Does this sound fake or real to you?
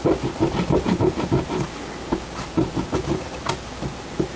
real